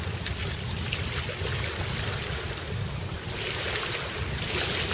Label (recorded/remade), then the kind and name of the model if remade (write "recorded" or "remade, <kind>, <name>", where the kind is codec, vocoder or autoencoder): recorded